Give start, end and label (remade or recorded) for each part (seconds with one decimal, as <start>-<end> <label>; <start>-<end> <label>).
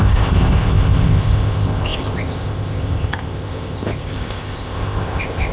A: 0.0-5.5 remade